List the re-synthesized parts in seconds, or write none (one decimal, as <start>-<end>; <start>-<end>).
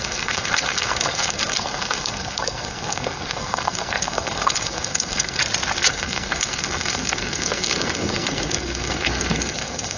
0.0-5.4; 5.9-10.0